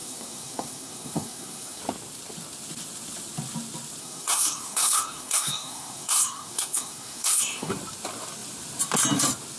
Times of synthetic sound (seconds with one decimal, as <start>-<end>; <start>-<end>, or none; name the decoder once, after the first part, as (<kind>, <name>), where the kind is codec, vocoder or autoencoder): 0.0-1.8 (codec, SNAC); 4.0-7.7